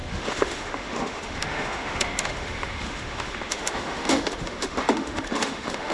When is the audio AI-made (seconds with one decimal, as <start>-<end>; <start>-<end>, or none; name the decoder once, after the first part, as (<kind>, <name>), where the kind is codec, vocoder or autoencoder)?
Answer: 0.0-5.9 (autoencoder, DAC-VAE)